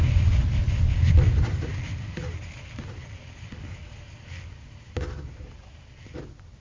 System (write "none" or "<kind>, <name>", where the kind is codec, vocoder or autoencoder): none